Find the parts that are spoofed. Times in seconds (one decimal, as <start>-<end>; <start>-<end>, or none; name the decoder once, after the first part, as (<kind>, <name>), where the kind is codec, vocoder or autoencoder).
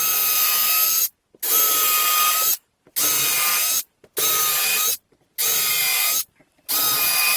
none